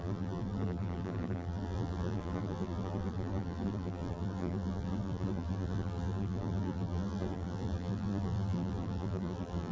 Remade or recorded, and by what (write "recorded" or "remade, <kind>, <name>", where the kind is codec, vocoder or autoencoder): remade, vocoder, BigVGAN v2